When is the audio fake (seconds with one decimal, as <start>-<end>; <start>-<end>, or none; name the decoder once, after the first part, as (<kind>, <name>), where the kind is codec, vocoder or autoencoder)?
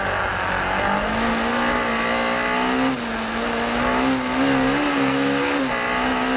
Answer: 4.9-5.6 (codec, SNAC)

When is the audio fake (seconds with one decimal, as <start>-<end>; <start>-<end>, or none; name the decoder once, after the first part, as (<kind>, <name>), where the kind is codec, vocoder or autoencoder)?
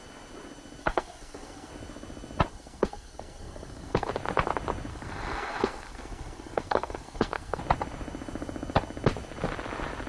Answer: 0.8-1.7 (codec, SNAC); 2.5-4.1; 4.9-7.6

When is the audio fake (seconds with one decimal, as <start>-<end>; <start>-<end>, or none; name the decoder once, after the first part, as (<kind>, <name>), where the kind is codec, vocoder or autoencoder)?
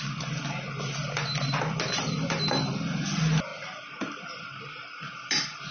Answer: none